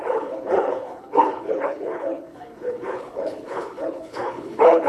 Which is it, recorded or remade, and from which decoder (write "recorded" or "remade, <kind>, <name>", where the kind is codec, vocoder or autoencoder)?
remade, codec, HILCodec